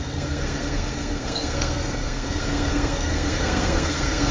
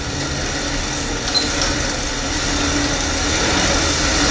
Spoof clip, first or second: first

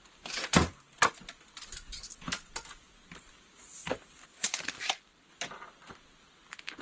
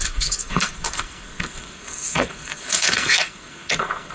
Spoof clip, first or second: second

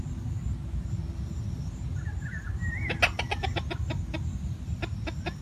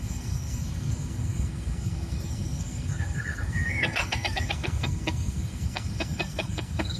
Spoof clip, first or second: second